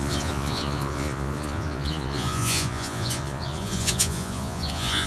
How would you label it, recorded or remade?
remade